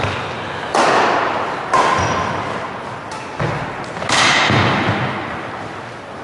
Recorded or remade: recorded